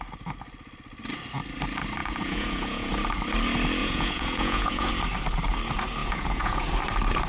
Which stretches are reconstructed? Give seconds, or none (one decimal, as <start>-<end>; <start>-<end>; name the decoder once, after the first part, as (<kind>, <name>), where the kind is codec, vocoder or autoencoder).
2.0-2.9 (vocoder, Vocos); 3.8-4.9; 6.0-6.7